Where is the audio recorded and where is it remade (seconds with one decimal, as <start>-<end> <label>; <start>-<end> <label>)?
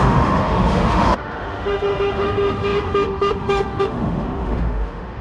0.0-5.2 remade